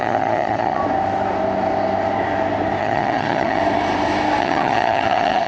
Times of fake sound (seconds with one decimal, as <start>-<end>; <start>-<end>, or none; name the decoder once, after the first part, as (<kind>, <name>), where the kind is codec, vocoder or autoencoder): 0.0-0.8 (vocoder, HiFi-GAN); 2.8-3.6; 4.4-5.5